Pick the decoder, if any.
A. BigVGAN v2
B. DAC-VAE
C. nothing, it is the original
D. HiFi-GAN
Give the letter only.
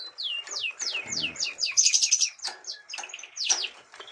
C